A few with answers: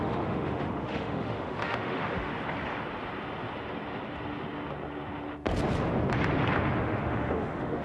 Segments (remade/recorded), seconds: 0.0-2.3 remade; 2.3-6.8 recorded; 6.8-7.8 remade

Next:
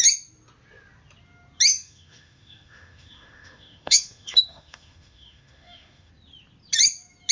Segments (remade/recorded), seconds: 0.0-1.7 recorded; 1.7-6.1 remade; 6.1-7.3 recorded